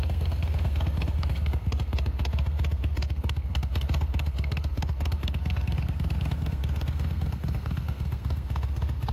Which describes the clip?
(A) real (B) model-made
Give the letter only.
B